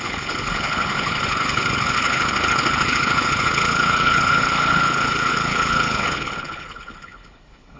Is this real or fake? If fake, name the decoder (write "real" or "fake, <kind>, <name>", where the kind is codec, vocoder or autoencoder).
fake, codec, HILCodec